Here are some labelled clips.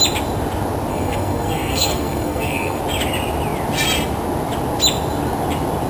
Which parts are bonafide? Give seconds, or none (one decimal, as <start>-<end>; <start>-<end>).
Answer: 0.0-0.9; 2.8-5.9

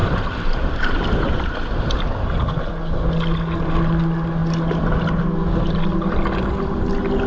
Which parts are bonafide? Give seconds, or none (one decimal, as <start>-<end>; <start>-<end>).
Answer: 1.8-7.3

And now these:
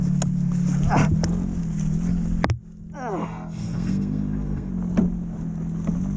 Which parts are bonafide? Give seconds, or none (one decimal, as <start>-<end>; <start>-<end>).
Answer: 0.0-3.2; 4.7-6.2